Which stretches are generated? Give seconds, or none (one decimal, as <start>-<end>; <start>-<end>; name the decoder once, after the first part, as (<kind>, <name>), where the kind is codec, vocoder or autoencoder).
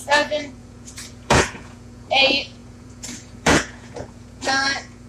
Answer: 0.0-5.1 (vocoder, Vocos)